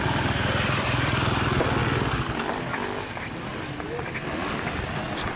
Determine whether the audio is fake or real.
real